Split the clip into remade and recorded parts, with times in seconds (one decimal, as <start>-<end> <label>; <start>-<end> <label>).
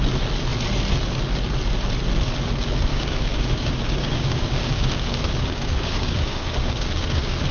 0.0-2.9 recorded; 2.9-7.5 remade